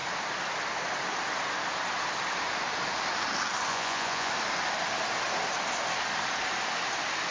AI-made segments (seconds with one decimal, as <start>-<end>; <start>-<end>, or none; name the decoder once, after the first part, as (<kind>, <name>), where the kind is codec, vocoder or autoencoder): 3.7-4.3 (vocoder, Vocos)